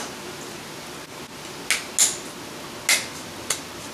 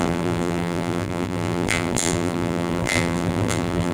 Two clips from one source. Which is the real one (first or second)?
first